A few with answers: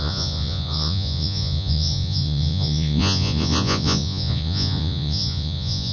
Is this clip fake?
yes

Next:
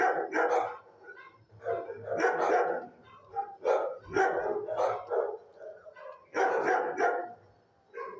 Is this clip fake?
no